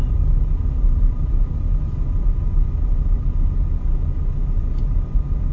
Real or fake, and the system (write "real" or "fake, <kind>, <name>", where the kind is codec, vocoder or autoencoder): real